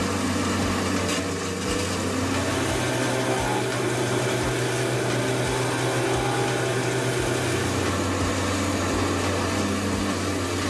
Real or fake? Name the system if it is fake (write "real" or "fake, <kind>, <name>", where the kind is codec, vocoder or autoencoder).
real